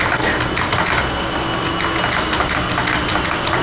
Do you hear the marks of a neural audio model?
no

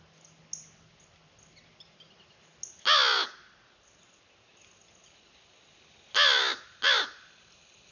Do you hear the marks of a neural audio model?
no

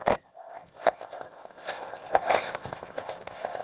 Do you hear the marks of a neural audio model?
yes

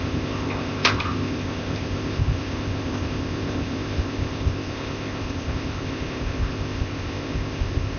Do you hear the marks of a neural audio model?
yes